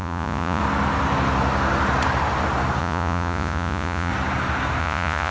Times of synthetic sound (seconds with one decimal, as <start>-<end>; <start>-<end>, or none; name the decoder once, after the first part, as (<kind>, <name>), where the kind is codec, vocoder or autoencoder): 0.0-0.6 (vocoder, Vocos); 2.8-4.1; 4.8-5.3